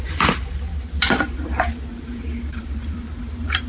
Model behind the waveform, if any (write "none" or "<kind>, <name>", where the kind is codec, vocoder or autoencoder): vocoder, BigVGAN v2